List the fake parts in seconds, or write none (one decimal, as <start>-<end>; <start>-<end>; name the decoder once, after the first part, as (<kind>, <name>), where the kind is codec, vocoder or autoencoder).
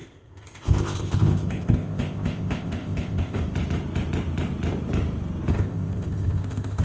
0.0-3.4 (codec, ZipCodec); 5.5-6.8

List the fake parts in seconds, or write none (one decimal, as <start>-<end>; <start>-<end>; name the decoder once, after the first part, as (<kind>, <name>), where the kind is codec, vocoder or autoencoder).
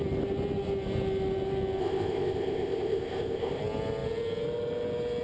1.8-3.6 (codec, ZipCodec)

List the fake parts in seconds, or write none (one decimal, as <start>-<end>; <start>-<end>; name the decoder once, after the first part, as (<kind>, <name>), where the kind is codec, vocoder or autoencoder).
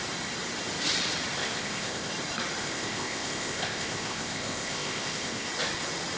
1.4-2.1 (codec, ZipCodec); 2.6-5.5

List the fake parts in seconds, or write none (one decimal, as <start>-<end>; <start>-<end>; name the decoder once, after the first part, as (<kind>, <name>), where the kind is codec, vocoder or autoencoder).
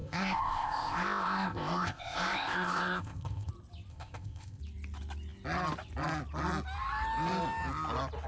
0.0-3.5 (codec, ZipCodec); 3.9-4.6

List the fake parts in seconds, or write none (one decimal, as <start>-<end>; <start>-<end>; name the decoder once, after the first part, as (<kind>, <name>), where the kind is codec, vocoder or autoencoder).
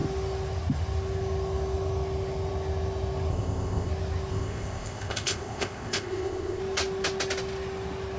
3.3-3.9 (codec, ZipCodec); 4.3-6.6